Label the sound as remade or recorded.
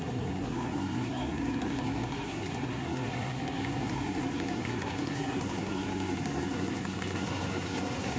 remade